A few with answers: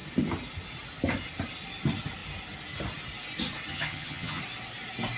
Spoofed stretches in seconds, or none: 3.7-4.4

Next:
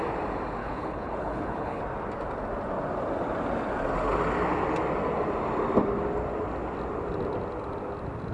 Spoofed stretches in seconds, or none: 0.6-1.8

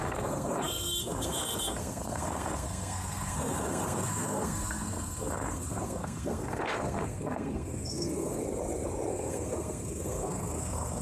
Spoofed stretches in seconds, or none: 0.0-8.4; 9.1-11.0

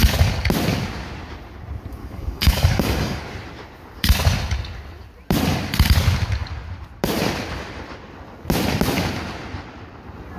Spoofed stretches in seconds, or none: 2.0-3.2

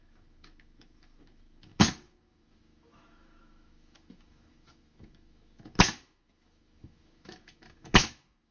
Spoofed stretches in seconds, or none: 0.0-8.5